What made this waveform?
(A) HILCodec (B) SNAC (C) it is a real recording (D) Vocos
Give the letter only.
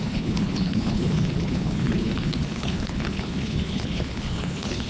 A